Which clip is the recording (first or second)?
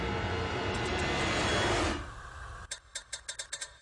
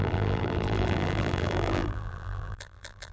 first